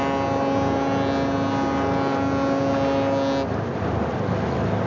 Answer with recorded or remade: recorded